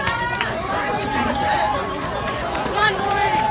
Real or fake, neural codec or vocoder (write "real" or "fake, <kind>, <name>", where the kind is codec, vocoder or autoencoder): fake, vocoder, Vocos